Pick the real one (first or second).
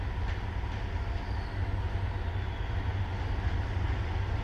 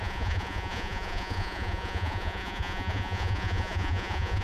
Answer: first